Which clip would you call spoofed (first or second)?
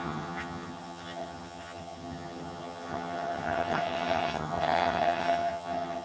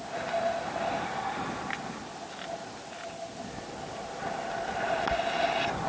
first